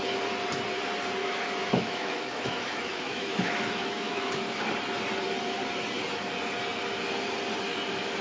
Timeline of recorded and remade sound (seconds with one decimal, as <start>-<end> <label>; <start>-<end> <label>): 0.0-1.2 recorded; 1.2-4.6 remade; 4.6-8.2 recorded